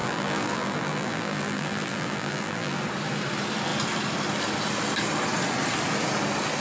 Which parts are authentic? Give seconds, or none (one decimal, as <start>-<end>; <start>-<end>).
2.8-6.6